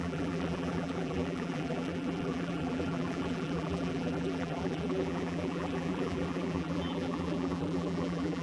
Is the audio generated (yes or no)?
yes